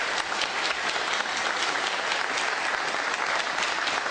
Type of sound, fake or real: real